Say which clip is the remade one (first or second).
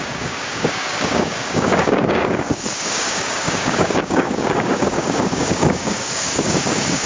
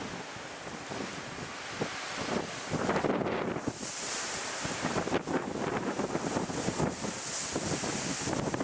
first